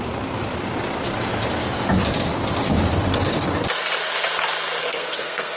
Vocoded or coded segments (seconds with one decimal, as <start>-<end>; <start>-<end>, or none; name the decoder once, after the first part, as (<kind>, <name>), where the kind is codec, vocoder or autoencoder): 4.8-5.6 (codec, SNAC)